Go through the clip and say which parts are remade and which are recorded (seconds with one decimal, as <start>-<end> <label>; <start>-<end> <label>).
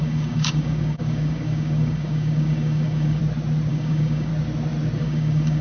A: 0.0-3.2 remade; 3.2-3.7 recorded; 3.7-4.3 remade; 4.3-5.0 recorded; 5.0-5.6 remade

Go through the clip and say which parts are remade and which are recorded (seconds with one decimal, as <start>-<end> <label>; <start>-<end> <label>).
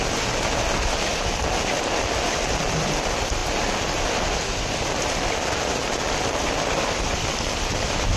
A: 0.0-8.2 recorded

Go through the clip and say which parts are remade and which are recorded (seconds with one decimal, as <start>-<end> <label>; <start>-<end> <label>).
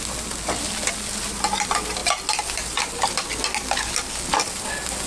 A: 0.0-5.1 recorded